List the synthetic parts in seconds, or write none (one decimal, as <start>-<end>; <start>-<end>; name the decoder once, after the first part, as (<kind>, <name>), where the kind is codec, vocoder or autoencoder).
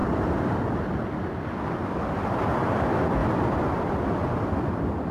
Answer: 0.0-0.6 (vocoder, BigVGAN v2); 3.2-3.9